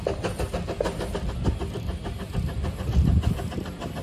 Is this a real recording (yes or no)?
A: yes